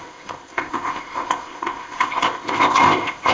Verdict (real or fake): fake